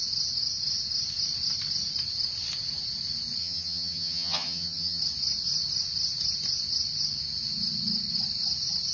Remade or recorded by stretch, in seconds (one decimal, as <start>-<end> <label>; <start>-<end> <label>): 0.0-3.4 recorded; 3.4-5.0 remade; 5.0-8.9 recorded